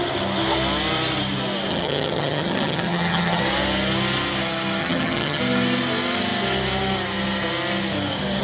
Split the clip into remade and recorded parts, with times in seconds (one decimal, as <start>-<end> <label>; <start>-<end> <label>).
0.0-1.7 recorded; 1.7-3.4 remade; 3.4-4.8 recorded; 4.8-5.4 remade; 5.4-8.4 recorded